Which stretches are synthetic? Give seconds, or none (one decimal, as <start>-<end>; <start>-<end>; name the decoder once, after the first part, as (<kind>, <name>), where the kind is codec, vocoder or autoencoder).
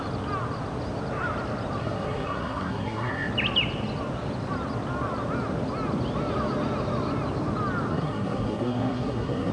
1.8-3.3 (codec, SNAC); 7.9-9.5